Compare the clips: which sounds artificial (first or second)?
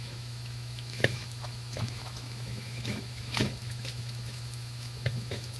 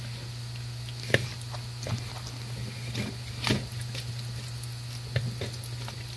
first